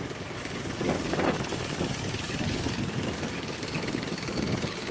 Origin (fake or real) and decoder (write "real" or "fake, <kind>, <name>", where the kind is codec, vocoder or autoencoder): fake, codec, DAC